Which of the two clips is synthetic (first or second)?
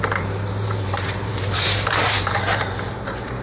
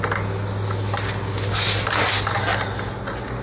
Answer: first